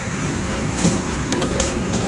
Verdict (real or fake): fake